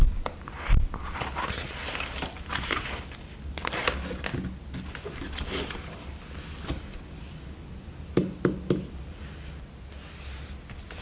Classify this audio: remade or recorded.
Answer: recorded